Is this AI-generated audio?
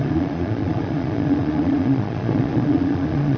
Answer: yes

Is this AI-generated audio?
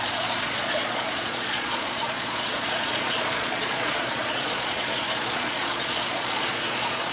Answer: yes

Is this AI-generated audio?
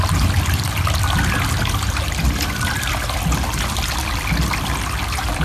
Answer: no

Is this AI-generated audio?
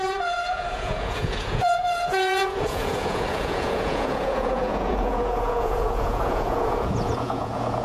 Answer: yes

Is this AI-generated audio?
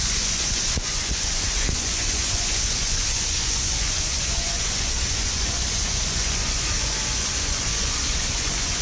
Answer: yes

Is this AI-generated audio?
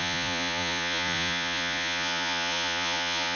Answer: yes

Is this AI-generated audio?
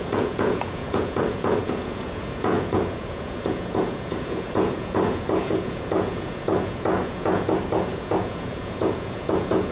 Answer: yes